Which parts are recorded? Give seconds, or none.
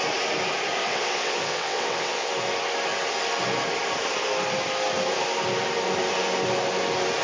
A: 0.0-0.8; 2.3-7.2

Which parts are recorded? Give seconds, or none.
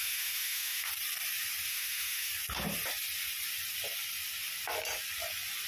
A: 0.9-1.7; 2.3-5.7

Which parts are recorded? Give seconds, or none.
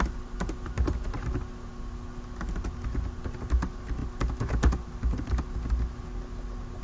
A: 0.0-6.8